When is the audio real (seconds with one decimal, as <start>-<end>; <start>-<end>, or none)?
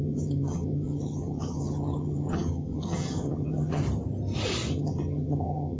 3.8-4.7